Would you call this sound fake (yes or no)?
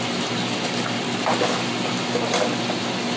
no